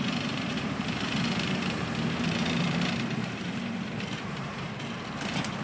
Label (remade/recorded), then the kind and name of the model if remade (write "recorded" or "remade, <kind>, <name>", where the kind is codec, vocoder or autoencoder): remade, vocoder, BigVGAN v2